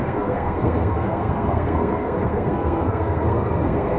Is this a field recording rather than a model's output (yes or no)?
no